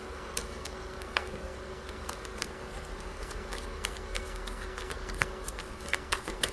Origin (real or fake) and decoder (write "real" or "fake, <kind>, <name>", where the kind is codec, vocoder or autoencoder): fake, codec, SNAC